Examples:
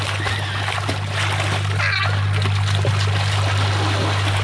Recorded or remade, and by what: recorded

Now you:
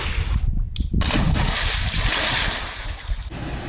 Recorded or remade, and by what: recorded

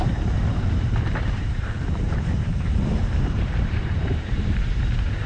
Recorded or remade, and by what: remade, vocoder, BigVGAN v2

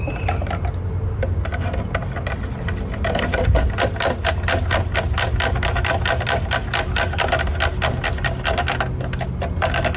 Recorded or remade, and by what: recorded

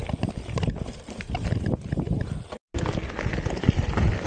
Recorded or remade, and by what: recorded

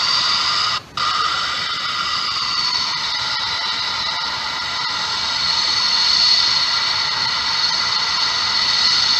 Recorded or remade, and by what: recorded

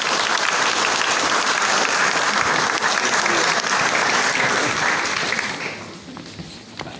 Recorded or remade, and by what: recorded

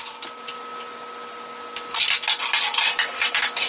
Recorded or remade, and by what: recorded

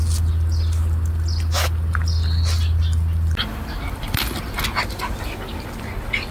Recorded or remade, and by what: recorded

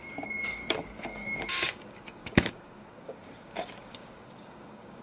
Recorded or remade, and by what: remade, codec, DAC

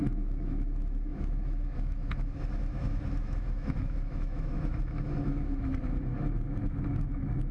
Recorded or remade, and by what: remade, autoencoder, DAC-VAE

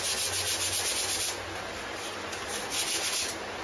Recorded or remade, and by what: recorded